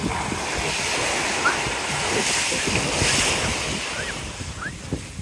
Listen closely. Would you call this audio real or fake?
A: real